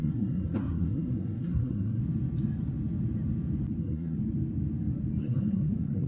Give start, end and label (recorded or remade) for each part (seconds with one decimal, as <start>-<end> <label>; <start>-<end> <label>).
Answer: 0.0-2.0 remade; 2.0-3.8 recorded; 3.8-4.2 remade; 4.2-5.2 recorded; 5.2-6.1 remade